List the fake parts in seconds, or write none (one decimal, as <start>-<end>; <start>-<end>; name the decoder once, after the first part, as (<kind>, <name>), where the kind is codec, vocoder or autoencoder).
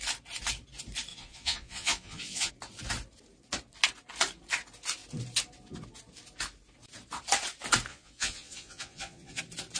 1.1-2.5 (vocoder, Vocos); 7.9-9.4